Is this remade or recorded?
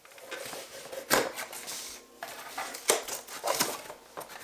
recorded